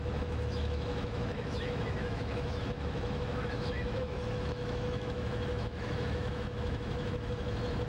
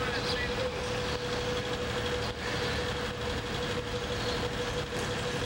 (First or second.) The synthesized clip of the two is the first